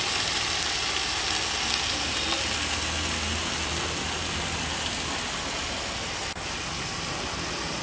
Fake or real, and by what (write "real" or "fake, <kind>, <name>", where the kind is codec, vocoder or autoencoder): real